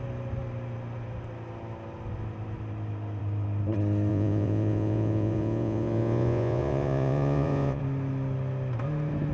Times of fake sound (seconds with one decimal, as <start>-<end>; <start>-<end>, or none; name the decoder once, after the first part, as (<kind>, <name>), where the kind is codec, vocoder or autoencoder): 4.1-7.8 (vocoder, Vocos)